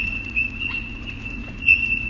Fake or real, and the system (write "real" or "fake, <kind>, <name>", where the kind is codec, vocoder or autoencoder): fake, vocoder, Vocos